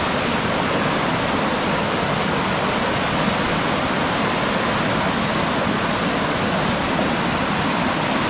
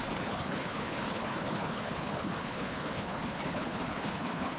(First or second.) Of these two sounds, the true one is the first